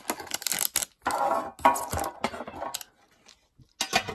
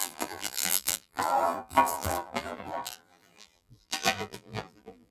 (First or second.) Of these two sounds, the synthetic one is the second